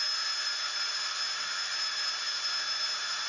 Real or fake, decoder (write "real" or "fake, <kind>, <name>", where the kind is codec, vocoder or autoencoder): real